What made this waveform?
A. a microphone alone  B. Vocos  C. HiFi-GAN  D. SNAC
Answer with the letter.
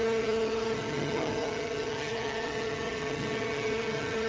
C